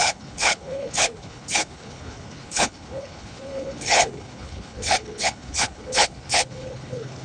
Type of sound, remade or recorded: remade